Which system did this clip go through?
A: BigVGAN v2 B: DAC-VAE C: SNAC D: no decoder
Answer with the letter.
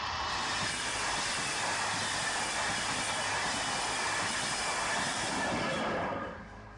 D